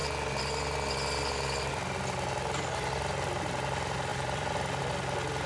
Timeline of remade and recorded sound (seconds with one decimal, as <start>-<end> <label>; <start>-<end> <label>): 0.0-4.1 recorded; 4.1-4.8 remade; 4.8-5.5 recorded